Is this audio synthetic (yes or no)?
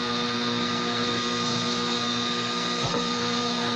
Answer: yes